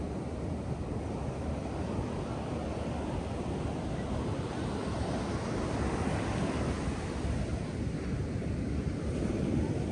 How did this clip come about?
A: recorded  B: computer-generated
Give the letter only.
A